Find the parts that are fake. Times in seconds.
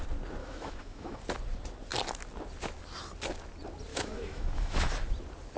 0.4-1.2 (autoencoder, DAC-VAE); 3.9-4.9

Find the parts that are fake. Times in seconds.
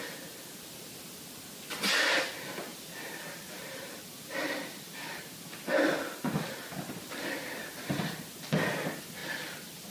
2.7-5.2 (vocoder, BigVGAN v2); 9.2-9.9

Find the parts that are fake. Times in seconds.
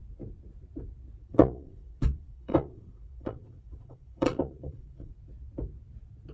1.3-5.1 (vocoder, Vocos)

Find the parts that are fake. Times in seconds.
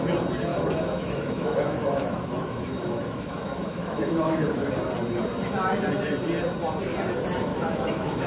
0.5-4.7 (autoencoder, DAC-VAE); 7.5-8.3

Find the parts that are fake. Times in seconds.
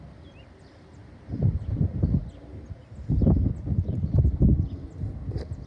none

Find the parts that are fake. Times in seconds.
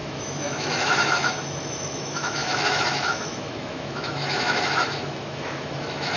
0.0-6.2 (autoencoder, DAC-VAE)